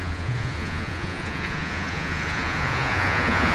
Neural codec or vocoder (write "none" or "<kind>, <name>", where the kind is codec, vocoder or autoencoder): vocoder, Vocos